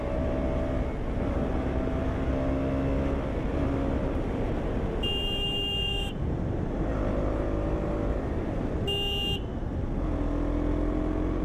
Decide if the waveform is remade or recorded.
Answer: recorded